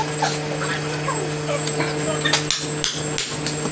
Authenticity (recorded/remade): recorded